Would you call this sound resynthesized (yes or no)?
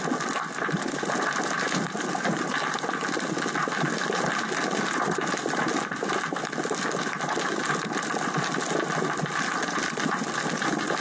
no